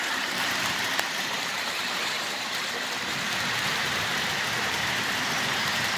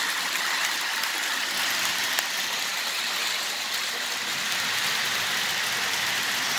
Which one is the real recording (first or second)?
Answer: second